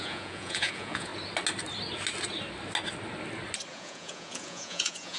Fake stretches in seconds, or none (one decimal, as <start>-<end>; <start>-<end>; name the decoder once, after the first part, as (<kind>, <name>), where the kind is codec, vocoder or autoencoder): 0.0-1.1 (vocoder, Vocos); 3.7-5.2